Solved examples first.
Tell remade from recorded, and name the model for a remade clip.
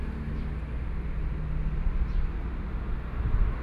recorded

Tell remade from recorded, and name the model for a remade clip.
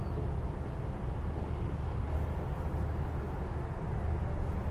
recorded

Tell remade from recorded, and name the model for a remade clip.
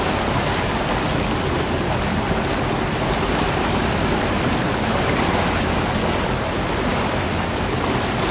recorded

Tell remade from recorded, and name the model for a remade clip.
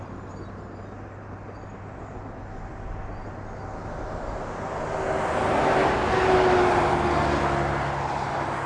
recorded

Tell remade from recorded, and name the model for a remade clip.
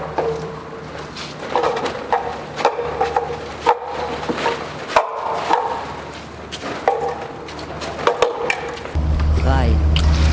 recorded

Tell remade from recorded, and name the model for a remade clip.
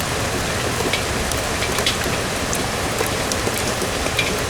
recorded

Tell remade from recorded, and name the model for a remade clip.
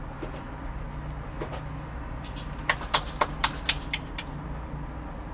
recorded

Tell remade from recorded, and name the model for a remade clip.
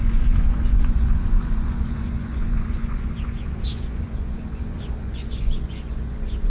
remade, vocoder, Vocos